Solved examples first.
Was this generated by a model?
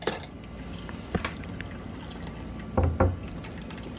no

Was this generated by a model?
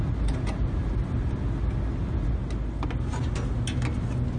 no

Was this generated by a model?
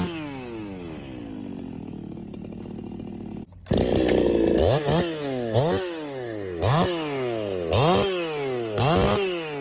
no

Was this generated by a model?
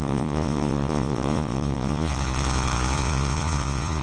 yes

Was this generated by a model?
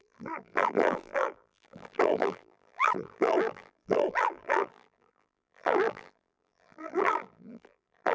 yes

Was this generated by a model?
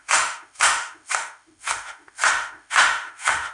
yes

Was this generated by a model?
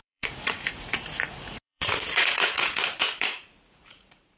yes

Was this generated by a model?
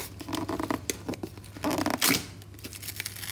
no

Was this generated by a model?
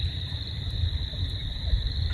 yes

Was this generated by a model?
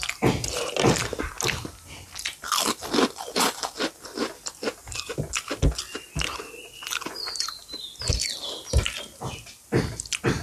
no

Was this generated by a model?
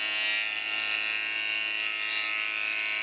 no